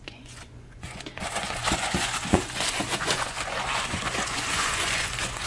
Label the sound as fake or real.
fake